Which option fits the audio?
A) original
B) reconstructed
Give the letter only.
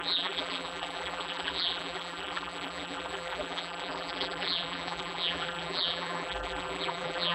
B